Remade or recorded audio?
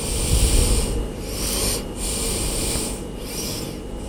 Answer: recorded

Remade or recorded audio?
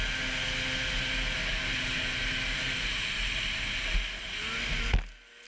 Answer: recorded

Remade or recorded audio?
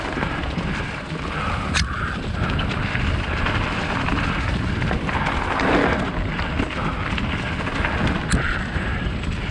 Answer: recorded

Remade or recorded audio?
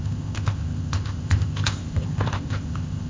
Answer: remade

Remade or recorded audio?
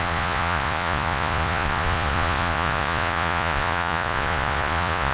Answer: remade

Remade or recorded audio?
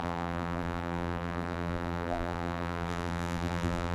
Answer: remade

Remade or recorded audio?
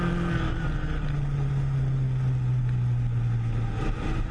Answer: recorded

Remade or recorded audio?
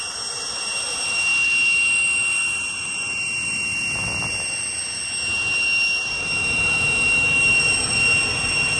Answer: recorded